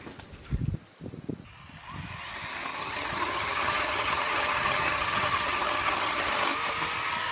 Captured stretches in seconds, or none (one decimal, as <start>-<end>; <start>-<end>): 0.0-2.7; 6.3-7.3